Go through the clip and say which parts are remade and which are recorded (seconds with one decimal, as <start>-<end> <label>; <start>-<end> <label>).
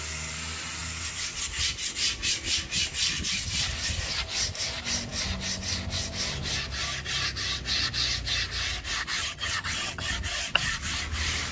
0.0-9.2 recorded; 9.2-10.1 remade; 10.1-11.5 recorded